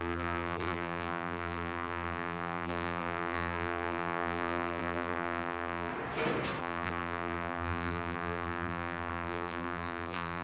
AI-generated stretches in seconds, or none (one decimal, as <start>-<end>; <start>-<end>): 0.0-5.9; 6.6-10.4